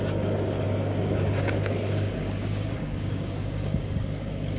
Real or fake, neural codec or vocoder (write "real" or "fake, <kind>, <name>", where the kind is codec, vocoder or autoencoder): fake, codec, DAC